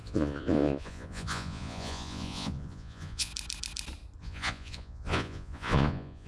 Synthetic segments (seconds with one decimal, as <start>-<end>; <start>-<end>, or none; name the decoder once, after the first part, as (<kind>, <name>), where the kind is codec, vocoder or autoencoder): 0.0-3.3 (vocoder, Vocos); 4.2-6.3